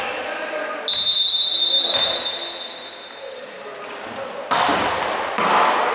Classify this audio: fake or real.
real